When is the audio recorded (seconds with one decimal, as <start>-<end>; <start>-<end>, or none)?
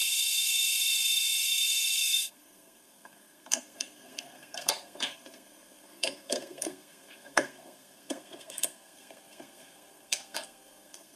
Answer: none